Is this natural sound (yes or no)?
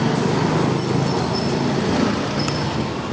yes